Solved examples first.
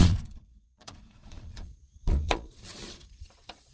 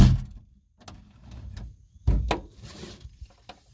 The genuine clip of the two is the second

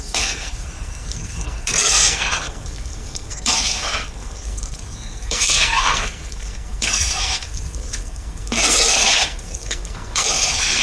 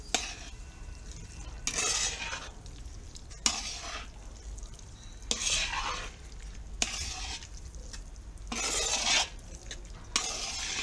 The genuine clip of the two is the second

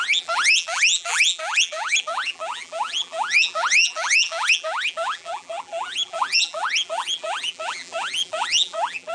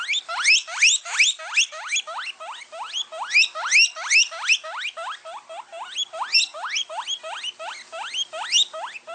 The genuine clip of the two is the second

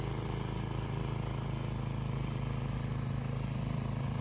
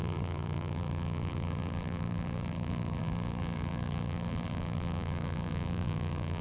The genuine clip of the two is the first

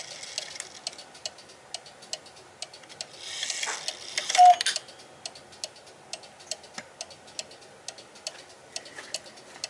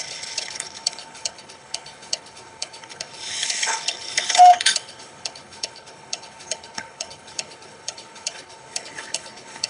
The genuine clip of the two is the first